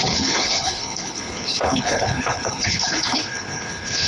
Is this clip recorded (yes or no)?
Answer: no